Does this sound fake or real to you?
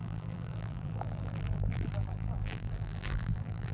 fake